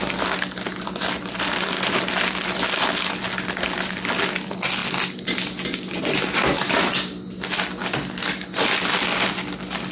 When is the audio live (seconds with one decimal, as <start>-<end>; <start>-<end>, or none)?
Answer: 0.0-9.9